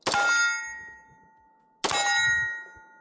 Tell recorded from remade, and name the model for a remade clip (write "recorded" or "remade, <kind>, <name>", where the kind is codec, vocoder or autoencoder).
recorded